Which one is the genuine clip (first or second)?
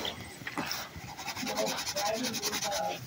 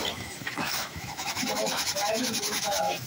first